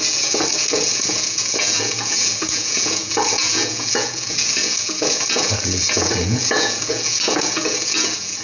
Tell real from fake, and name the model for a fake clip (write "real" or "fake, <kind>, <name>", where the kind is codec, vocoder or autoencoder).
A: fake, vocoder, Vocos